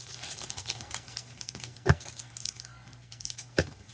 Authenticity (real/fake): fake